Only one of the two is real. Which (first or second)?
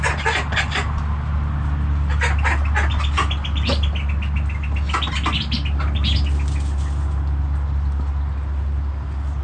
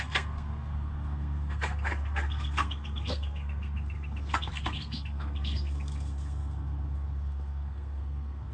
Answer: first